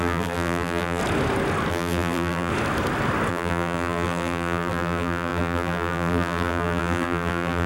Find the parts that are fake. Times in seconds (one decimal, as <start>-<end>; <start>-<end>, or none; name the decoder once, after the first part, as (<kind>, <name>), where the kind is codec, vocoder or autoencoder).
0.0-1.0 (vocoder, BigVGAN v2); 1.7-2.5; 3.3-7.7